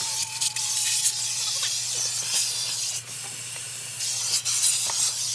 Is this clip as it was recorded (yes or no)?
yes